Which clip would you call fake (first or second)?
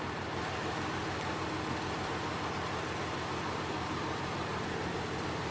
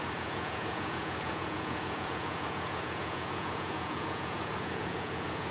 second